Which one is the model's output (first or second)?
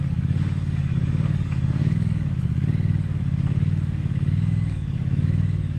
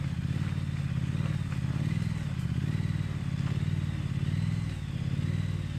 first